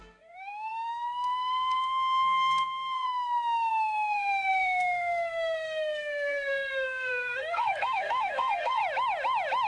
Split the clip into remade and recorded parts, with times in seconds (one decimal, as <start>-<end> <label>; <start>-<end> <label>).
0.0-8.8 remade; 8.8-9.7 recorded